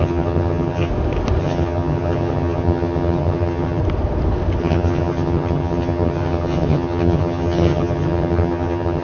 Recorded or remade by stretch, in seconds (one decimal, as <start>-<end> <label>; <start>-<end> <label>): 0.0-0.9 remade; 0.9-1.4 recorded; 1.4-3.8 remade; 3.8-4.6 recorded; 4.6-9.0 remade